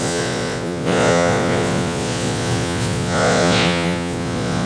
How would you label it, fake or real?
fake